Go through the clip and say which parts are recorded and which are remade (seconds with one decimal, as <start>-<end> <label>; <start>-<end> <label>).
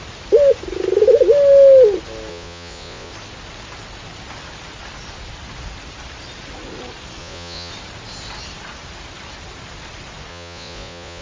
0.0-2.3 recorded; 2.3-3.1 remade; 3.1-7.2 recorded; 7.2-7.7 remade; 7.7-10.3 recorded; 10.3-11.2 remade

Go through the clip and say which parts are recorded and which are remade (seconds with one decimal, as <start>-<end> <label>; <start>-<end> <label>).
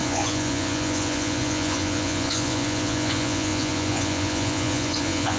0.0-5.4 remade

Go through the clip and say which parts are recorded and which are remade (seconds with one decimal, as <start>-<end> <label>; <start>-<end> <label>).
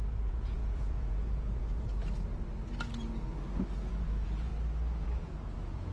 0.0-2.0 remade; 2.0-3.9 recorded; 3.9-4.5 remade; 4.5-5.0 recorded; 5.0-5.9 remade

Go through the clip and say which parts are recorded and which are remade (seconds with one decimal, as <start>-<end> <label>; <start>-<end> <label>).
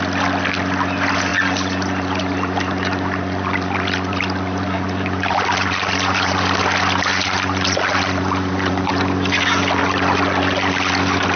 0.0-1.3 recorded; 1.3-6.4 remade; 6.4-7.1 recorded; 7.1-8.9 remade; 8.9-9.8 recorded; 9.8-10.9 remade; 10.9-11.4 recorded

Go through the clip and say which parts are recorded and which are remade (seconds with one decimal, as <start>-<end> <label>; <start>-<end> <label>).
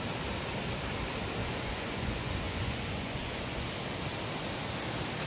0.0-1.4 recorded; 1.4-3.7 remade; 3.7-5.3 recorded